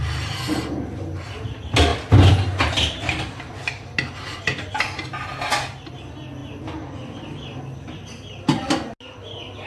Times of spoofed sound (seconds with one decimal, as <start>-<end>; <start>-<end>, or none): none